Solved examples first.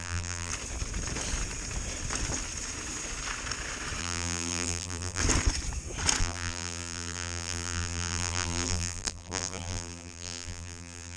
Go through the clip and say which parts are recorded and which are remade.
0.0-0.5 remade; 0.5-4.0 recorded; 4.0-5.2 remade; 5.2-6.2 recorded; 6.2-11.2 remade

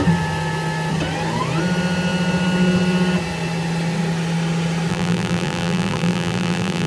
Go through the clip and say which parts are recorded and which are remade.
0.0-4.9 recorded; 4.9-6.9 remade

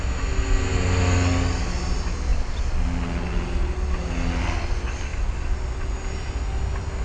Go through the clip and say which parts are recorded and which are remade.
0.0-7.0 recorded

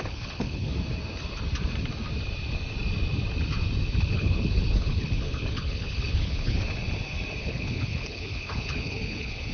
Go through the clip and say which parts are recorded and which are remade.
0.0-0.7 remade; 0.7-4.0 recorded; 4.0-6.6 remade; 6.6-7.4 recorded; 7.4-9.5 remade